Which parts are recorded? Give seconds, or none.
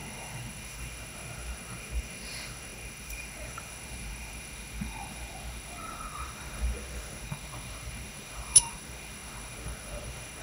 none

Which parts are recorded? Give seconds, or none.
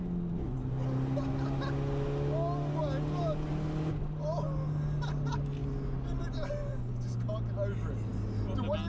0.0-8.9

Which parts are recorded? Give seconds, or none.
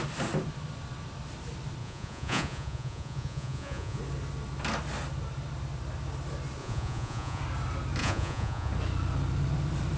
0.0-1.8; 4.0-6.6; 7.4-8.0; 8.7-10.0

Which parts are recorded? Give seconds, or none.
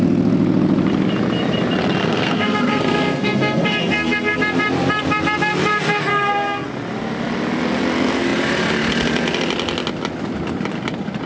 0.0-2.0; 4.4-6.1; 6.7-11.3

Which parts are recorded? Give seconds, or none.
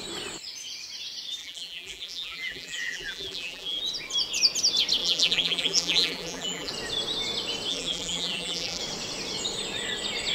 0.0-1.4; 3.8-5.0; 6.7-7.7; 8.8-10.3